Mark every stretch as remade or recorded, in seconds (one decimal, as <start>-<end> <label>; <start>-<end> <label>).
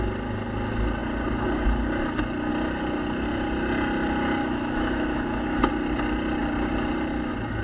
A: 0.0-4.4 recorded; 4.4-5.7 remade; 5.7-7.6 recorded